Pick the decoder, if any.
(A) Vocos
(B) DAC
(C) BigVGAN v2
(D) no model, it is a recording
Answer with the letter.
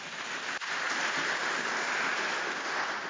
D